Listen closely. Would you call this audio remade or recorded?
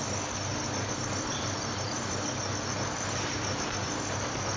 remade